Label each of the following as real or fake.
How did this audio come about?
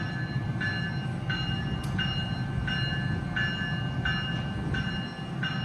real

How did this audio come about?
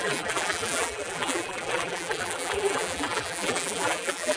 fake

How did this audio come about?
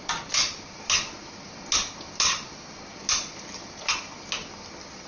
real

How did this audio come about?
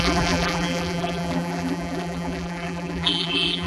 fake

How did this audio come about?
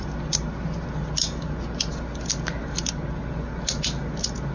real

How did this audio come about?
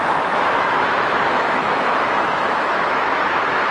fake